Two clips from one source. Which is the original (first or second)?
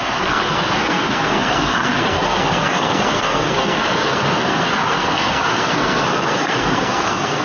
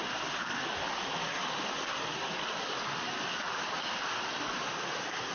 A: second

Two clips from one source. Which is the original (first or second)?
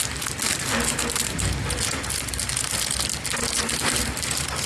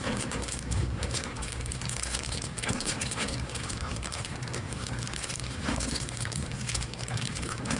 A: first